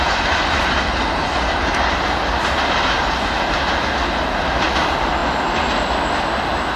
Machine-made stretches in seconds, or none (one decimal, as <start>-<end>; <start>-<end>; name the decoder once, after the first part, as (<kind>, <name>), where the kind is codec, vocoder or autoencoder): none